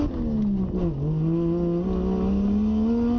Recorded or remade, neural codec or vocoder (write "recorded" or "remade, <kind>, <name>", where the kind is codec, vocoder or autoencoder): recorded